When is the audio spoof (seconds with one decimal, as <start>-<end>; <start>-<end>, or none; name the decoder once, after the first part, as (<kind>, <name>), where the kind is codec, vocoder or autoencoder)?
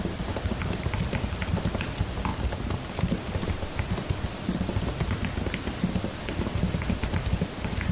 2.3-2.9 (vocoder, BigVGAN v2)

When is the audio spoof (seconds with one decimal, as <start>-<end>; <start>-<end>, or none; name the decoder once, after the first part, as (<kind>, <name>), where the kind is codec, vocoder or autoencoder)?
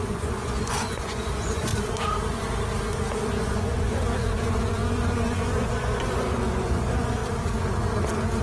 0.0-1.7 (vocoder, Vocos); 3.3-7.2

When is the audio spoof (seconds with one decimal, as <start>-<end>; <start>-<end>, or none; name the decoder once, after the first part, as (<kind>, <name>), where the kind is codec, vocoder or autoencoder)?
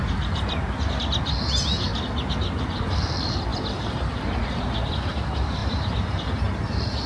0.0-1.9 (vocoder, BigVGAN v2); 2.6-5.6; 6.6-7.1